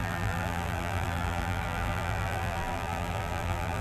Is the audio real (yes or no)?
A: no